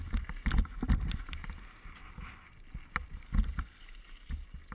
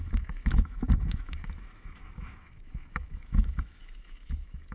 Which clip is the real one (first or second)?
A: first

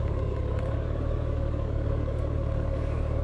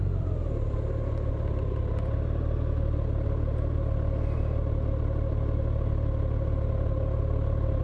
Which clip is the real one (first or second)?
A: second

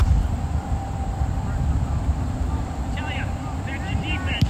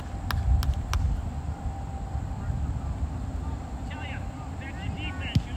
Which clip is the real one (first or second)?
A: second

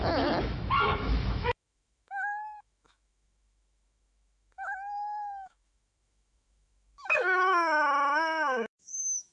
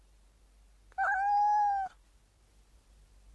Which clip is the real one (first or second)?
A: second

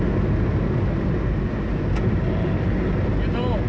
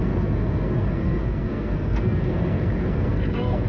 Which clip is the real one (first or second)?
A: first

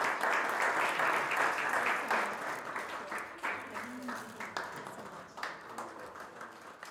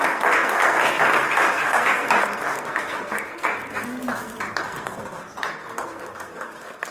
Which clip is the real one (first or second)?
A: first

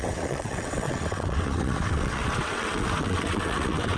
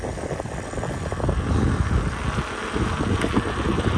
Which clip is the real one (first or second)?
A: second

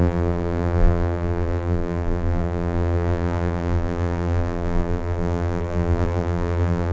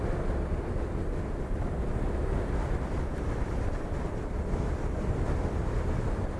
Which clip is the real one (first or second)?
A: second